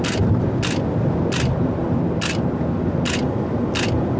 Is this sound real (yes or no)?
yes